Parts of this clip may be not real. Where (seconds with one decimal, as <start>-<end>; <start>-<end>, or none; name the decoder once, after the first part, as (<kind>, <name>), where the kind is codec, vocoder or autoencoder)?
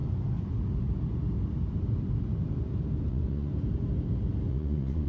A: 3.1-3.5 (vocoder, Vocos); 4.5-5.1